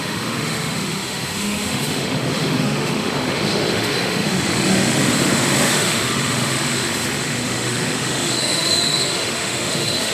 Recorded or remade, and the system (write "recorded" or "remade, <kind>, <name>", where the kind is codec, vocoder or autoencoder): remade, autoencoder, DAC-VAE